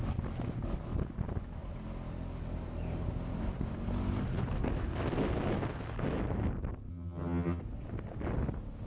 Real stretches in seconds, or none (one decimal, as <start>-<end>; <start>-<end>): 0.0-6.9; 7.6-8.9